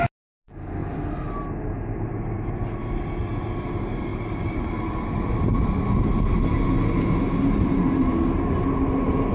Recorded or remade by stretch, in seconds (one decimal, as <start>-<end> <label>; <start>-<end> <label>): 0.0-0.8 recorded; 0.8-1.3 remade; 1.3-9.3 recorded

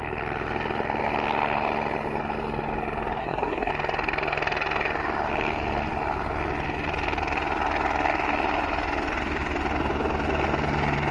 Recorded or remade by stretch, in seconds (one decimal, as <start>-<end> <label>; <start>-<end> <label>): 0.0-3.2 recorded; 3.2-3.7 remade; 3.7-11.1 recorded